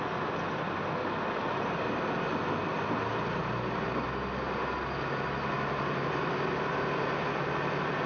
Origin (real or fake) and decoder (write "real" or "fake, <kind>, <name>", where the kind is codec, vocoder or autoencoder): real